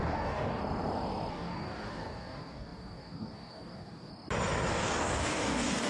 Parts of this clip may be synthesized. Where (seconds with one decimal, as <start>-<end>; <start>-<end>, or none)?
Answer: 0.0-0.6; 1.3-4.1; 4.7-5.9